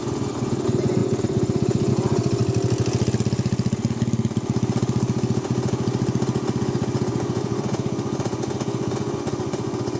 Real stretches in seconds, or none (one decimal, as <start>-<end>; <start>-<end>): 2.4-6.6